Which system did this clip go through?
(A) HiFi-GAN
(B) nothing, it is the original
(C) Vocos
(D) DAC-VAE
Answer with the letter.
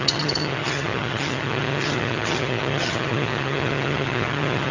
A